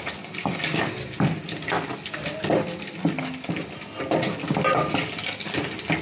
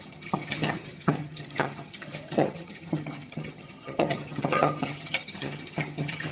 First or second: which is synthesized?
second